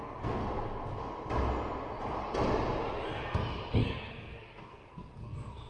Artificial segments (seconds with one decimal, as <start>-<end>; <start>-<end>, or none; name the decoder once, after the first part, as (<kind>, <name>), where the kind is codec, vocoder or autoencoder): 0.0-0.4 (codec, SNAC); 3.8-5.7